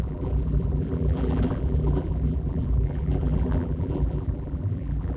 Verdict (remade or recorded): remade